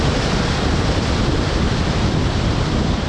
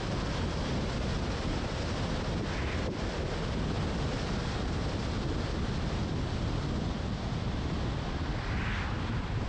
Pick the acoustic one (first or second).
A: second